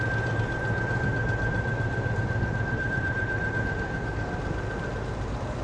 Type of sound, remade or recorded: recorded